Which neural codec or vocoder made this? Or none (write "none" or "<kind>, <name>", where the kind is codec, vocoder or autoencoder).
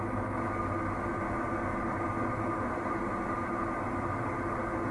none